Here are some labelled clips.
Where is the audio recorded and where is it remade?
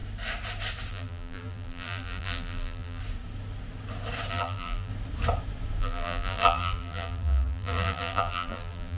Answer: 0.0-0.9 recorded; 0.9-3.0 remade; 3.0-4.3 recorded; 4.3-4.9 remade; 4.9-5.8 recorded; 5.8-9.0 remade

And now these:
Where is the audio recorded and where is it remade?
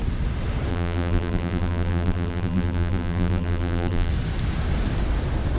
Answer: 0.0-0.7 recorded; 0.7-4.1 remade; 4.1-5.6 recorded